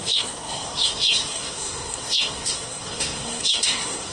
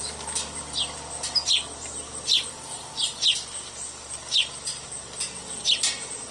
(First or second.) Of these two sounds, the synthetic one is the first